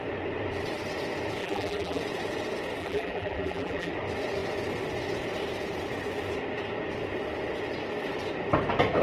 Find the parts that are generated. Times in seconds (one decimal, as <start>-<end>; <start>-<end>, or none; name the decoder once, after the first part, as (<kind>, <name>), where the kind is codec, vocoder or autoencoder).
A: 1.4-2.0 (vocoder, BigVGAN v2); 2.8-3.9